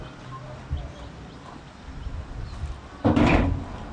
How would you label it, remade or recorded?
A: recorded